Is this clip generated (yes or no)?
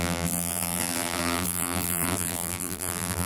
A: yes